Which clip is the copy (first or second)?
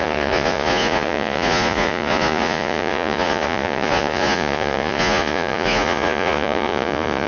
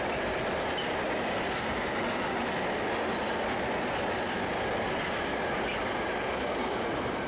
first